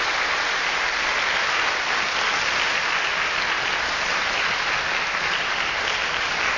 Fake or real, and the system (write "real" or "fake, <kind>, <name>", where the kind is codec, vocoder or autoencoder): real